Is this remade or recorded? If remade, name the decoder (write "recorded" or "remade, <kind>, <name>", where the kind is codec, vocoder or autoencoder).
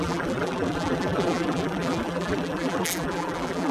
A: remade, vocoder, BigVGAN v2